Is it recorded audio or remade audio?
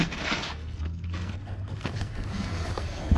remade